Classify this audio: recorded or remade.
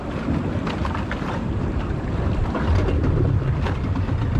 recorded